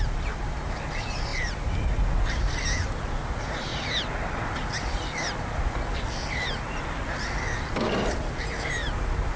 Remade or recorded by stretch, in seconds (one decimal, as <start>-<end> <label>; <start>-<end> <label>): 0.0-9.4 recorded